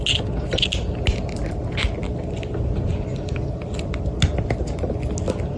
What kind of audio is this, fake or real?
real